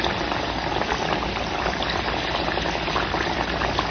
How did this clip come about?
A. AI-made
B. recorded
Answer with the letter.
B